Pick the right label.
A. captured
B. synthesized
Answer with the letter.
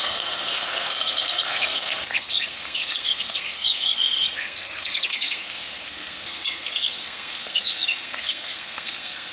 B